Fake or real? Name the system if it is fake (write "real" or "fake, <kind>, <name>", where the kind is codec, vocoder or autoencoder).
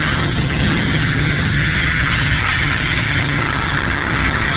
fake, vocoder, HiFi-GAN